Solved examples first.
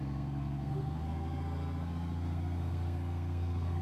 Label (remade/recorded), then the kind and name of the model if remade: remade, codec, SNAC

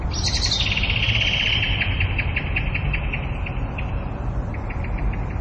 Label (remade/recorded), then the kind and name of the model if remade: recorded